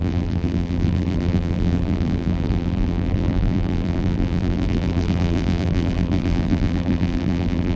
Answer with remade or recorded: remade